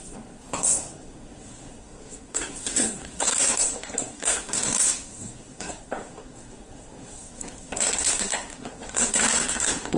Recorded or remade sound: remade